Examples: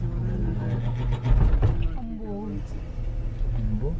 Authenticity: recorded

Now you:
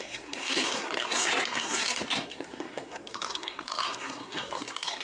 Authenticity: remade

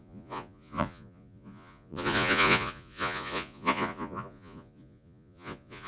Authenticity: remade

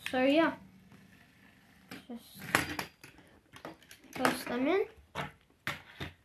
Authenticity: recorded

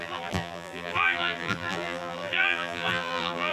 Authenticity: remade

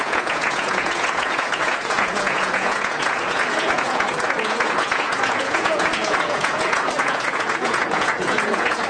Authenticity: remade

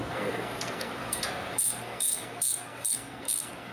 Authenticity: remade